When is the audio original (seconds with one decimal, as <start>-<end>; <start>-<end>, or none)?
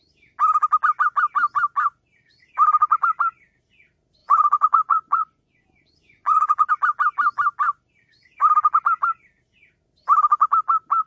0.0-4.2; 6.7-11.1